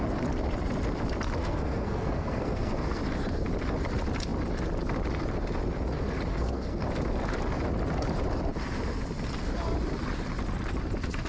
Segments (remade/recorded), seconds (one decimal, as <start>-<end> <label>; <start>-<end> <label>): 0.0-1.4 recorded; 1.4-3.0 remade; 3.0-6.3 recorded; 6.3-6.9 remade; 6.9-11.3 recorded